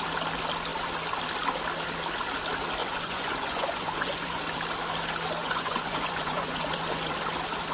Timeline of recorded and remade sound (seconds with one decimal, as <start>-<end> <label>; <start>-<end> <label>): 0.0-2.8 recorded; 2.8-4.4 remade; 4.4-5.4 recorded; 5.4-7.1 remade; 7.1-7.7 recorded